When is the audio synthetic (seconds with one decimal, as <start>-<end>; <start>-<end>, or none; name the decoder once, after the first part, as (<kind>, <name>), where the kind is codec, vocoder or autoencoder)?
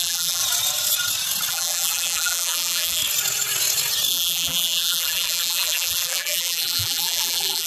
0.0-0.4 (vocoder, BigVGAN v2); 1.5-3.0; 4.1-7.7